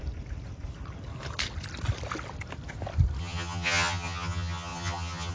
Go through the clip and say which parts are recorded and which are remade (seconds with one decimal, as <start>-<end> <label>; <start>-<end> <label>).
0.0-3.2 recorded; 3.2-5.3 remade